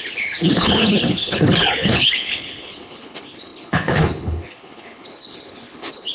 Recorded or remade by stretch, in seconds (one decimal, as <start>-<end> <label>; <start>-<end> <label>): 0.0-6.1 remade

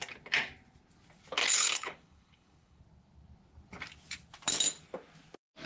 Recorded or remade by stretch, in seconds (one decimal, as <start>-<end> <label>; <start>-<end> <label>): 0.0-1.4 recorded; 1.4-2.8 remade; 2.8-5.7 recorded

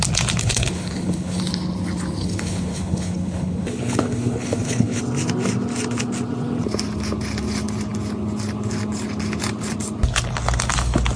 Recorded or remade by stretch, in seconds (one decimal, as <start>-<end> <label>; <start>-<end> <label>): 0.0-0.4 recorded; 0.4-1.4 remade; 1.4-2.2 recorded; 2.2-5.0 remade; 5.0-11.2 recorded

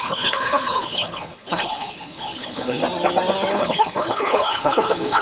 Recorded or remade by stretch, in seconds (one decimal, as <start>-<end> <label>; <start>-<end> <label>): 0.0-2.8 remade; 2.8-3.5 recorded; 3.5-5.2 remade

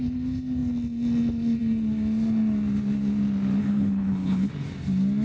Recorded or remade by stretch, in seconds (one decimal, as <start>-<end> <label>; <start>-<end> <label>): 0.0-3.6 recorded; 3.6-4.5 remade; 4.5-5.2 recorded